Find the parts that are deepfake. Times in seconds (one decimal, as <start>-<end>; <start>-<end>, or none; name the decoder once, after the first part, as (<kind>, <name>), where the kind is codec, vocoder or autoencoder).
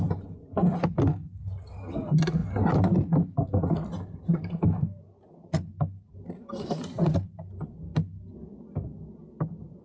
none